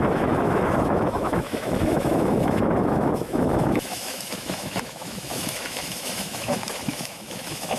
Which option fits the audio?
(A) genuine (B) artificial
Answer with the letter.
B